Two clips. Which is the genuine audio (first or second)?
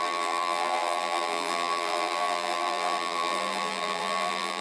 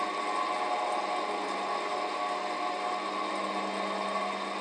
second